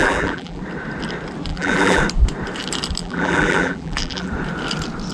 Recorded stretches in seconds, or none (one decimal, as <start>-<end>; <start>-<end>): 0.6-1.5; 2.0-3.0; 4.3-5.1